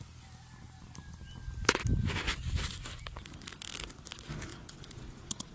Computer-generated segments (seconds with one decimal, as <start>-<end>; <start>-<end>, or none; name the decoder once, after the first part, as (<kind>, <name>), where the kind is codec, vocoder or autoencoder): 4.5-5.5 (vocoder, Vocos)